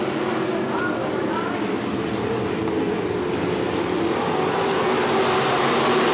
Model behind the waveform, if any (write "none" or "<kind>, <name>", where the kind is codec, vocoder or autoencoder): none